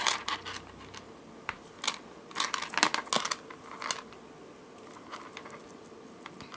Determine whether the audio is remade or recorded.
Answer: recorded